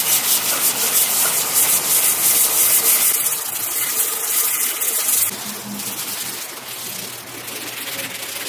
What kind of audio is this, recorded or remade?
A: recorded